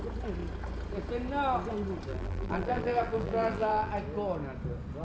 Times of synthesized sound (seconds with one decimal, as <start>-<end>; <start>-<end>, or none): 2.1-3.9